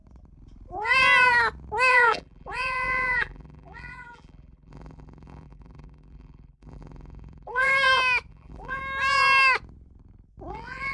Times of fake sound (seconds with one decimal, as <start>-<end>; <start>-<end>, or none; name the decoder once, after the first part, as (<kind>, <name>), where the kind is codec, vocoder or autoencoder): 1.9-7.7 (vocoder, BigVGAN v2); 8.3-8.8; 10.5-10.9